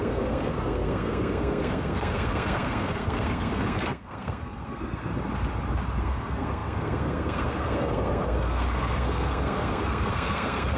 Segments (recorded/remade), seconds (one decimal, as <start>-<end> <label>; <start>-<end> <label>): 0.0-5.1 remade; 5.1-6.0 recorded; 6.0-10.8 remade